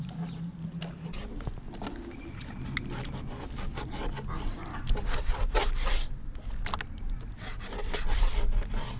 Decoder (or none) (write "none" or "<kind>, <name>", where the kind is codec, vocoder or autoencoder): none